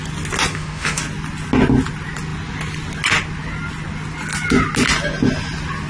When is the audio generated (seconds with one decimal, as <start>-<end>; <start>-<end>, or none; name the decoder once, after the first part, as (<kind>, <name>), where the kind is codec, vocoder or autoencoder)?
0.5-1.0 (autoencoder, DAC-VAE)